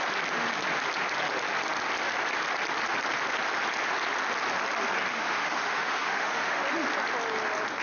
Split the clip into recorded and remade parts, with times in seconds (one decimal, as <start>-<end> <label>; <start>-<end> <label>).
0.0-5.1 recorded; 5.1-6.6 remade; 6.6-7.8 recorded